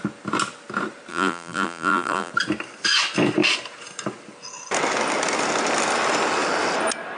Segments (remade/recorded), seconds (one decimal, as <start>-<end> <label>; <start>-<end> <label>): 0.0-1.1 recorded; 1.1-2.3 remade; 2.3-7.2 recorded